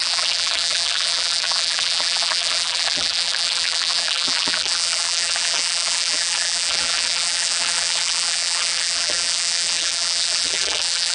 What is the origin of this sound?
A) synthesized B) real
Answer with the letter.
A